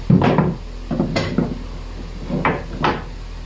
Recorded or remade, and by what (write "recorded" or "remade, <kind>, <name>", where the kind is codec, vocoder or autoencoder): recorded